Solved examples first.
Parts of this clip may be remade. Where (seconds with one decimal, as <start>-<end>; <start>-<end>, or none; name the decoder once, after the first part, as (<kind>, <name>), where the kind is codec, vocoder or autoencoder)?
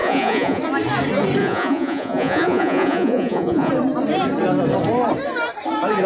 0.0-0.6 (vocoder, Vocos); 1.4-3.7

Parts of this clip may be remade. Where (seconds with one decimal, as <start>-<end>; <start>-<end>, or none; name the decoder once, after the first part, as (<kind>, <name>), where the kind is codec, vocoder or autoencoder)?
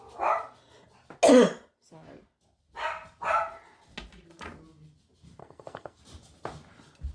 5.4-6.0 (codec, SNAC)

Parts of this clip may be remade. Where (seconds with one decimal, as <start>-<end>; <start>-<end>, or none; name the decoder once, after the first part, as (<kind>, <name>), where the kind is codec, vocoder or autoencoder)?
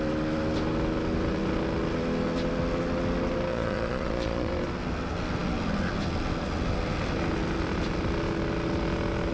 3.5-4.5 (vocoder, Vocos)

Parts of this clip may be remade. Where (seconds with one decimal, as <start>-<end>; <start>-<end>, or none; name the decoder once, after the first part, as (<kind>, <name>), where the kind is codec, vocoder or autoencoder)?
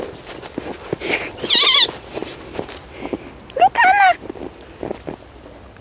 none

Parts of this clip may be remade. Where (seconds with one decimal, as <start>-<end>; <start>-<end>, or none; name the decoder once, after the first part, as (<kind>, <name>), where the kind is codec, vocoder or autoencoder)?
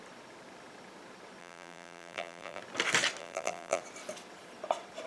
1.4-2.6 (vocoder, BigVGAN v2); 3.2-3.8